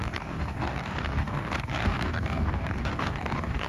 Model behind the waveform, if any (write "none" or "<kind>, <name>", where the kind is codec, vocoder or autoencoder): codec, DAC